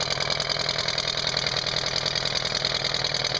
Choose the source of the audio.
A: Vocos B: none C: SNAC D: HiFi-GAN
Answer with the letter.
B